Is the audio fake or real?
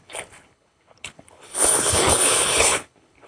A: fake